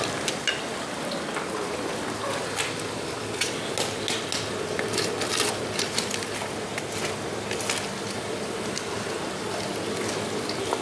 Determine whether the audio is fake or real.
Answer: real